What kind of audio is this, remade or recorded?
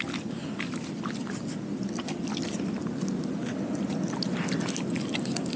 recorded